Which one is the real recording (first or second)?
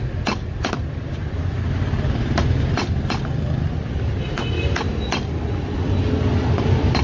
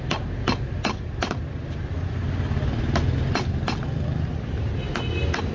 second